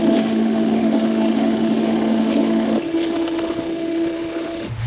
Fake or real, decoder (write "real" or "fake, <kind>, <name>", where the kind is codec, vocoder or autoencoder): fake, autoencoder, DAC-VAE